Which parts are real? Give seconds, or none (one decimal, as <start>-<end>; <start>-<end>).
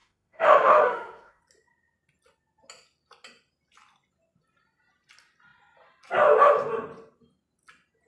1.4-8.1